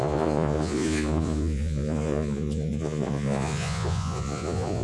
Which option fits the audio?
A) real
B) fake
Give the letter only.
B